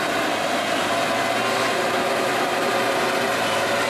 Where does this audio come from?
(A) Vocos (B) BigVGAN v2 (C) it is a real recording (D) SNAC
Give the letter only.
C